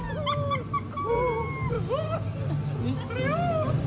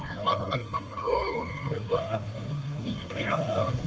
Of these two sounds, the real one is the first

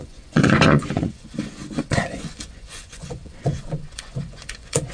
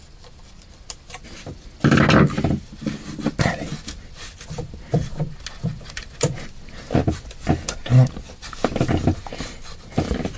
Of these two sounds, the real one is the second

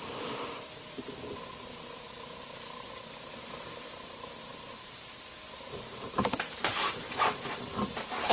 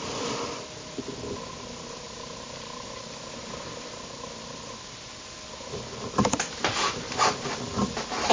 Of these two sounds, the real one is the second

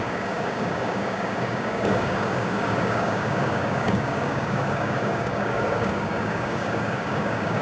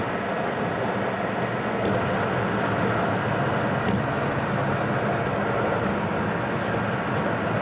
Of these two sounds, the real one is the second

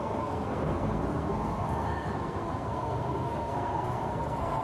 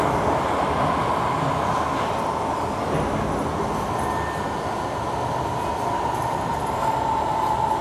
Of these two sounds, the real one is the second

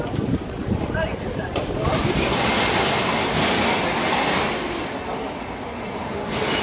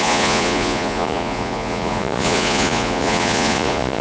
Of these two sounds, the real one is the first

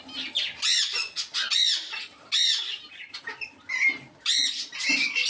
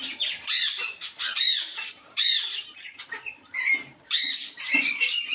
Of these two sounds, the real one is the first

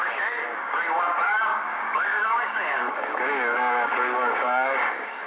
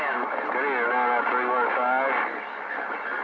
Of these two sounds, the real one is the second